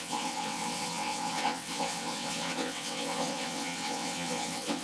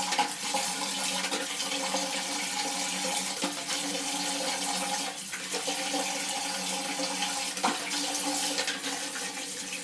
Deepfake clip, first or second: first